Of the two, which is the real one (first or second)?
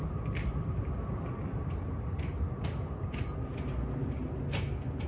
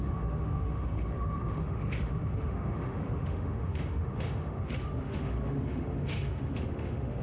first